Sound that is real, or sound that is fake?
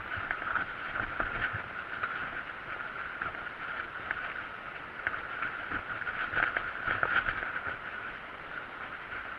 real